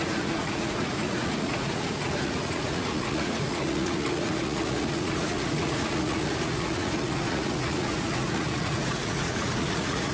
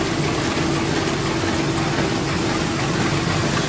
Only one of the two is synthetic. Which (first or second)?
first